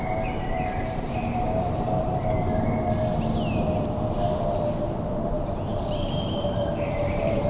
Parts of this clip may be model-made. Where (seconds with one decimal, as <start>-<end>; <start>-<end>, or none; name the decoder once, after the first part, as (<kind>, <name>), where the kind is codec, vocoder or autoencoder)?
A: 0.0-2.2 (vocoder, BigVGAN v2); 3.5-7.5